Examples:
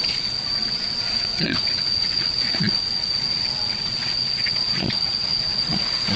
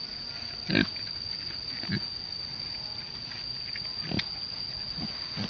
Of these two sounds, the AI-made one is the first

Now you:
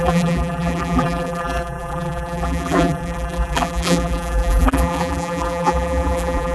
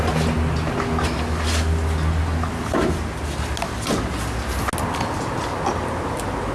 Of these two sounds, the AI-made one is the first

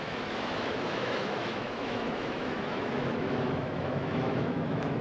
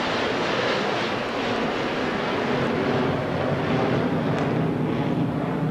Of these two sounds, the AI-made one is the first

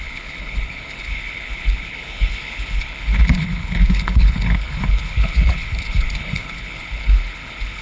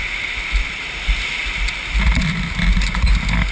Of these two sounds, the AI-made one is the first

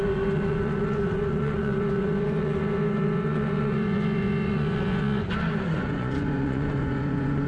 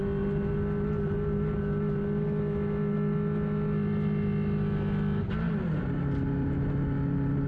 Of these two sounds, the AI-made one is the first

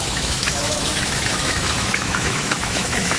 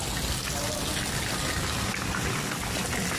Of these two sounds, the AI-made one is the first